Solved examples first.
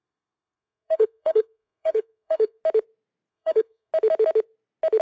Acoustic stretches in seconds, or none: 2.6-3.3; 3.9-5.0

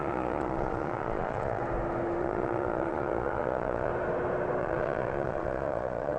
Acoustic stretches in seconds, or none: 1.6-2.2; 3.9-4.6

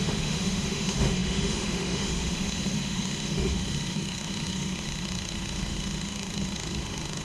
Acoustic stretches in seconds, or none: none

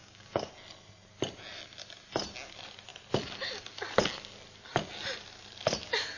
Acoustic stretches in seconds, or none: 0.5-6.2

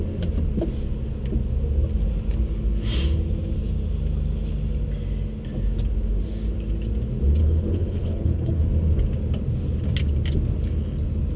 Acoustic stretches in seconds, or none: 0.0-7.4; 8.6-11.4

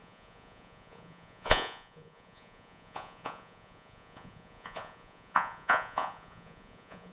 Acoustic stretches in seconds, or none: none

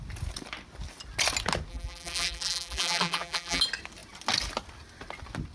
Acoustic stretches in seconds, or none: 0.0-1.7; 3.6-5.5

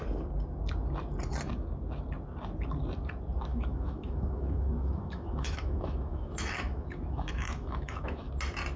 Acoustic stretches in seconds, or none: 0.0-3.5; 8.3-8.8